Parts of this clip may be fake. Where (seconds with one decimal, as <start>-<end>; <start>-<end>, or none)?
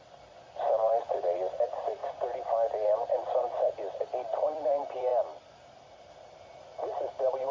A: 0.0-2.0; 3.4-7.5